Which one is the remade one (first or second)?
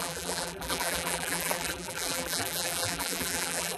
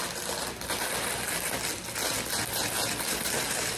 first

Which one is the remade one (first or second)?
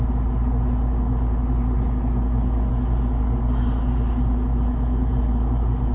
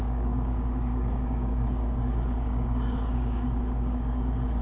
second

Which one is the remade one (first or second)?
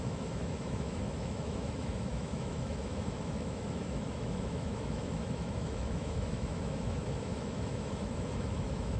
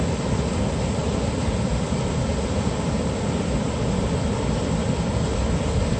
first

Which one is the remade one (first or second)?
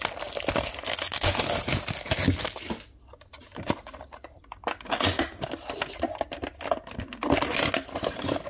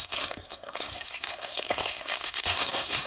second